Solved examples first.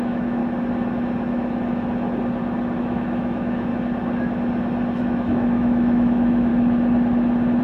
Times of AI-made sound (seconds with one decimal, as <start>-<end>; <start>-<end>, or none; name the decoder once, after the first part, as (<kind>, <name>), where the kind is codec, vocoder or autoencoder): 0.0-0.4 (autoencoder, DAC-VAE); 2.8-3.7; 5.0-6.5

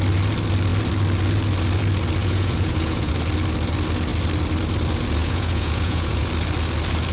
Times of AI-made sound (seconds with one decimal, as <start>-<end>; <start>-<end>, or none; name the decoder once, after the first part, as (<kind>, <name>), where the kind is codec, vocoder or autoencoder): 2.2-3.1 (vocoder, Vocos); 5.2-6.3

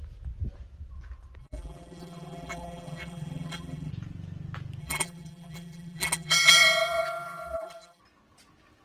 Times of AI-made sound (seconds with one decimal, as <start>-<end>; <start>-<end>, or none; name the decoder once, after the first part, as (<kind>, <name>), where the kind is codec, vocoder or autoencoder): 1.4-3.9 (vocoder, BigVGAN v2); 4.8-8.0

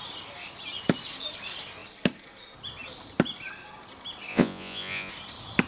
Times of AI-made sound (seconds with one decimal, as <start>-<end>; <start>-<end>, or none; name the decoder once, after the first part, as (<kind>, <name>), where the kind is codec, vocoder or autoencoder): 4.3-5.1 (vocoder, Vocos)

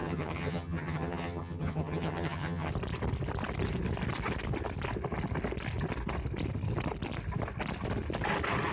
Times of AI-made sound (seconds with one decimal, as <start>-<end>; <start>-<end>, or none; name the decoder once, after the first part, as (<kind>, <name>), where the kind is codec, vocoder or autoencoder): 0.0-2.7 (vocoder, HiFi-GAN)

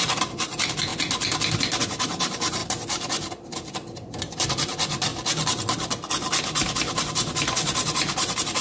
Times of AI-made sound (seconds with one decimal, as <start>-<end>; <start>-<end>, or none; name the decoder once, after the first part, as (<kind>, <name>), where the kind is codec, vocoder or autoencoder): 0.0-0.9 (vocoder, BigVGAN v2); 1.8-5.1; 7.0-8.6

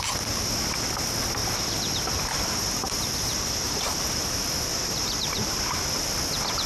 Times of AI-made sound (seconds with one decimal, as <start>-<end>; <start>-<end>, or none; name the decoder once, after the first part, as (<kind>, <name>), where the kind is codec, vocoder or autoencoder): 1.4-4.3 (vocoder, BigVGAN v2); 4.7-5.8